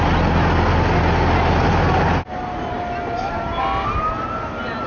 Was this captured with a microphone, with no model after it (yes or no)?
yes